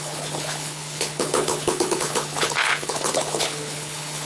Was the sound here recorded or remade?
remade